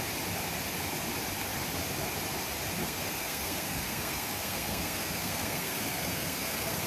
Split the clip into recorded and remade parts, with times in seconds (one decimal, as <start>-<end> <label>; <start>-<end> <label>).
0.0-2.8 recorded; 2.8-6.9 remade